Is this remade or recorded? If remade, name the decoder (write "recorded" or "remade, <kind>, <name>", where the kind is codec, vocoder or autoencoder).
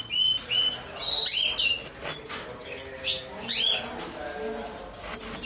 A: recorded